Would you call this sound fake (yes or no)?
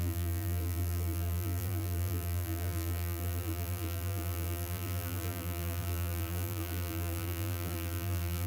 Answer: yes